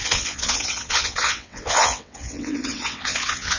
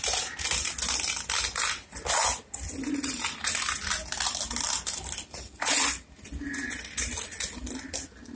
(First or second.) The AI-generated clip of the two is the first